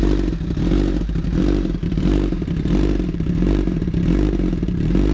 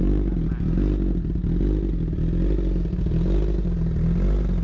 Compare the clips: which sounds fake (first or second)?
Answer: first